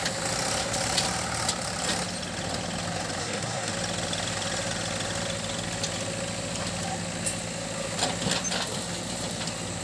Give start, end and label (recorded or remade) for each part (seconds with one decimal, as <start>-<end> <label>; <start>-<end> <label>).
0.0-3.2 recorded; 3.2-3.7 remade; 3.7-9.8 recorded